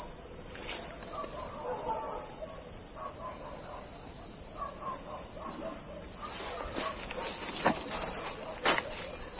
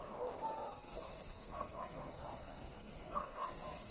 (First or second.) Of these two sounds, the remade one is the second